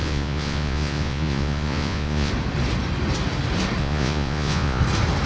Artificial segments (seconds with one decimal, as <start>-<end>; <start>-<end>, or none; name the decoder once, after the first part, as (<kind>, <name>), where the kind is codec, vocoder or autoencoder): 0.0-2.3 (vocoder, Vocos); 3.8-4.8